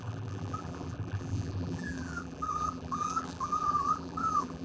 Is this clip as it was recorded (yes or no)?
no